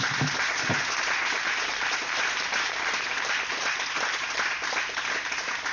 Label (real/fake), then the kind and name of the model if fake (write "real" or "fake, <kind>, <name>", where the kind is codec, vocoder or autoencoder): real